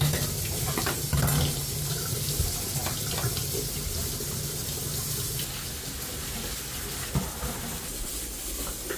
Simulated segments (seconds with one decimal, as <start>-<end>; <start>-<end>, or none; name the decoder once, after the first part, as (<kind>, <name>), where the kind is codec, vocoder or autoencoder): none